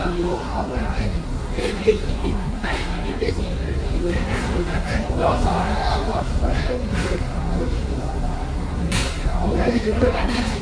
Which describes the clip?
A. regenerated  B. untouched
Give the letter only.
A